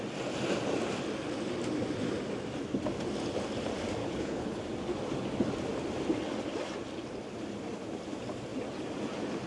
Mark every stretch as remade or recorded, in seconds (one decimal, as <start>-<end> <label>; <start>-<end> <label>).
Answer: 0.0-4.0 recorded; 4.0-4.6 remade; 4.6-9.5 recorded